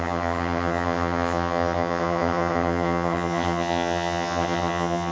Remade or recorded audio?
remade